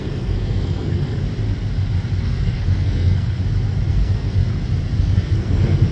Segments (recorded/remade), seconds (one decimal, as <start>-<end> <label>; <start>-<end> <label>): 0.0-1.2 remade; 1.2-2.2 recorded; 2.2-3.4 remade; 3.4-3.9 recorded; 3.9-4.4 remade; 4.4-5.0 recorded; 5.0-5.9 remade